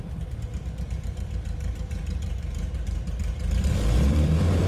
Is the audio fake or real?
fake